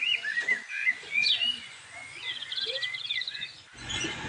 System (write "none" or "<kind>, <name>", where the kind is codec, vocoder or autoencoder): vocoder, Vocos